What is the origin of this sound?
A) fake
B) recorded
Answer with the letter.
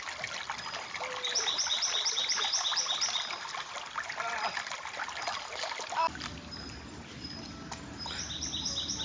B